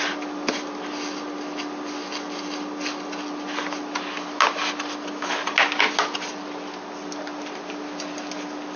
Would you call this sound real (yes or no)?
yes